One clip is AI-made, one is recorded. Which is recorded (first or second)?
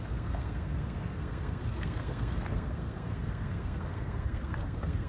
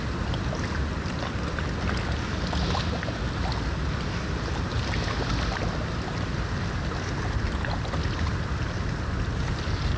second